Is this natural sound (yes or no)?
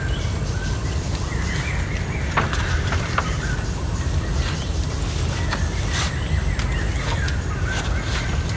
yes